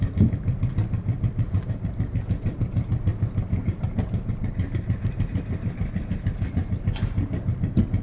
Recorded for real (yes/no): yes